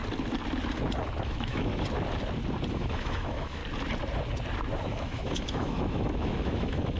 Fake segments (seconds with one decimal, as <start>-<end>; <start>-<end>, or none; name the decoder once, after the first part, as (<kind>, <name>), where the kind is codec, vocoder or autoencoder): 1.2-1.7 (autoencoder, DAC-VAE); 2.7-3.6; 4.8-7.0